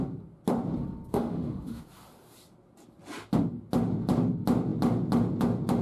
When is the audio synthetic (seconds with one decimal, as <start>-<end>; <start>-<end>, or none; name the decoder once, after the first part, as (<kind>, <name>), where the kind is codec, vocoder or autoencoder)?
1.1-1.8 (autoencoder, DAC-VAE)